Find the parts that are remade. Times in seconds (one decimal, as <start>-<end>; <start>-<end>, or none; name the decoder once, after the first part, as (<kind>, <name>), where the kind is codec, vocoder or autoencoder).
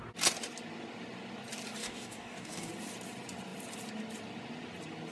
1.8-2.7 (codec, DAC)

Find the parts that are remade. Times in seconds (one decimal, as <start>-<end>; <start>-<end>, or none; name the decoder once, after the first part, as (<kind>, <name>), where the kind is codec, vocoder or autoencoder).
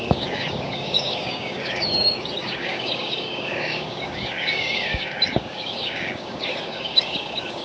0.0-7.6 (codec, DAC)